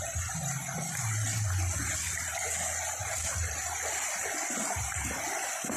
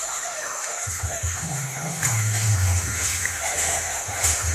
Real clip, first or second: first